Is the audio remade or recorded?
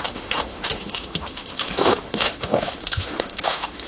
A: remade